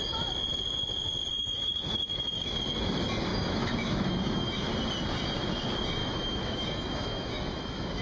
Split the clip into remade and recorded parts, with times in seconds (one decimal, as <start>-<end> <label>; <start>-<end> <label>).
0.0-1.3 recorded; 1.3-2.5 remade; 2.5-3.3 recorded; 3.3-4.7 remade; 4.7-6.0 recorded; 6.0-8.0 remade